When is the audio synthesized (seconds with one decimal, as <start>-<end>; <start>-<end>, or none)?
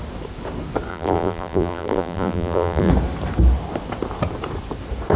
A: 0.9-2.9